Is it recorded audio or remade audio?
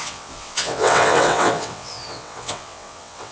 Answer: remade